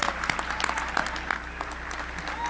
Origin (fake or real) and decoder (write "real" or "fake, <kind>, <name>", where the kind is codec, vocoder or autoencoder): real